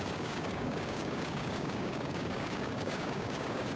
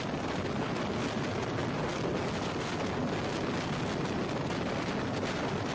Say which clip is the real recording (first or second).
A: second